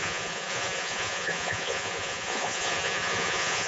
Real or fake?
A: fake